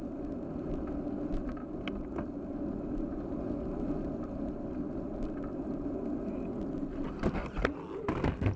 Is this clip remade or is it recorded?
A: recorded